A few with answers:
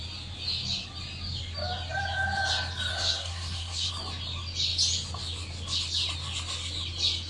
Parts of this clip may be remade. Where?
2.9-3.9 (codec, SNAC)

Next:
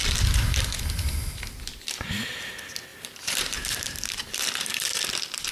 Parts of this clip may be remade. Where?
2.9-4.9 (vocoder, BigVGAN v2)

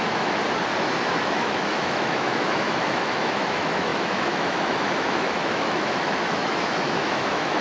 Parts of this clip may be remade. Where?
0.0-0.4 (autoencoder, DAC-VAE); 1.2-7.6